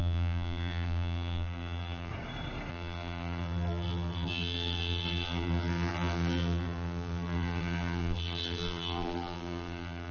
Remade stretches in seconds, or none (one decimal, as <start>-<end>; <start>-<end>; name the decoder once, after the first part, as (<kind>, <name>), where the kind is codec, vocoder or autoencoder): 0.0-2.1 (vocoder, BigVGAN v2); 2.7-10.1